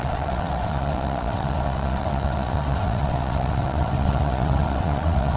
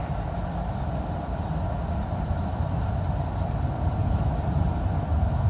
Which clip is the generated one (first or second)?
first